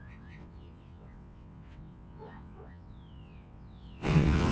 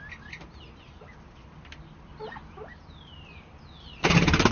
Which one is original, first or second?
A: second